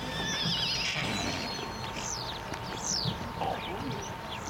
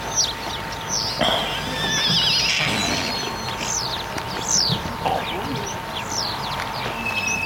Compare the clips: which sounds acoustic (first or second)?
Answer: second